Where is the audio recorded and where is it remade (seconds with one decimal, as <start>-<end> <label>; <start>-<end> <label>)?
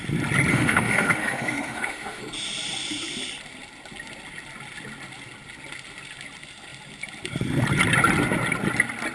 0.0-0.5 recorded; 0.5-2.2 remade; 2.2-9.1 recorded